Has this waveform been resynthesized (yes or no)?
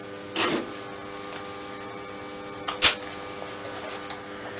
no